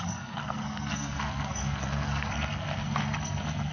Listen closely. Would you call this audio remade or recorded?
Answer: remade